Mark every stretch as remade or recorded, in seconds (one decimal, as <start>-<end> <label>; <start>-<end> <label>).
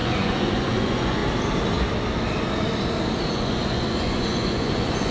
0.0-1.2 remade; 1.2-3.3 recorded; 3.3-5.1 remade